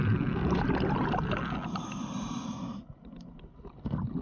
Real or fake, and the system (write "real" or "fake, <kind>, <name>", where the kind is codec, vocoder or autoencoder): real